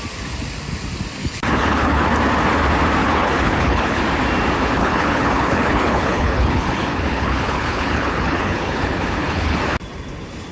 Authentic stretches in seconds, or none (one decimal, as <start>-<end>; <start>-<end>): 0.0-1.2; 2.1-3.0; 4.0-4.8; 9.6-10.5